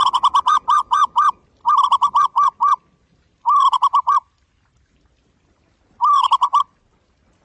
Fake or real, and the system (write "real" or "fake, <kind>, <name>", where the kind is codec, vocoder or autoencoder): real